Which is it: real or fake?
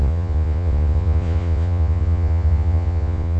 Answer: fake